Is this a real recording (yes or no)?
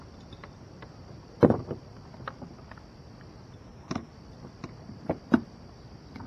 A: yes